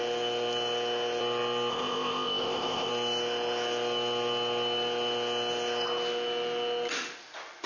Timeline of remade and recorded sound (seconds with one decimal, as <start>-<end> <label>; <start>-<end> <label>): 0.0-1.7 recorded; 1.7-2.9 remade; 2.9-7.7 recorded